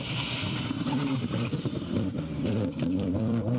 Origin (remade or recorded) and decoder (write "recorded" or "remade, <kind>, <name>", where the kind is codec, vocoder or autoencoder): remade, vocoder, BigVGAN v2